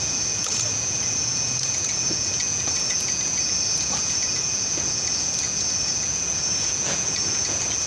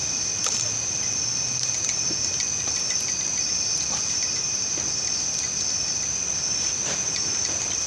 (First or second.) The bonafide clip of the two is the second